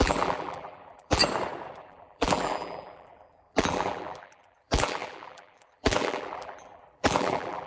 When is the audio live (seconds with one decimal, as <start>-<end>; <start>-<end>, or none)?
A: 1.2-1.8